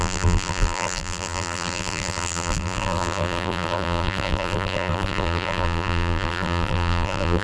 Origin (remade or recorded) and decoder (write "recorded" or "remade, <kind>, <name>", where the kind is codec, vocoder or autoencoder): remade, vocoder, BigVGAN v2